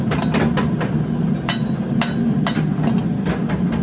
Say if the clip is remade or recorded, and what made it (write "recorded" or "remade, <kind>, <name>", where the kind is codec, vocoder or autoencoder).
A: recorded